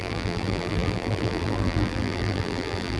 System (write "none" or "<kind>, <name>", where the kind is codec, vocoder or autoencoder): vocoder, BigVGAN v2